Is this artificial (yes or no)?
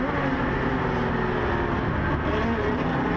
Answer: no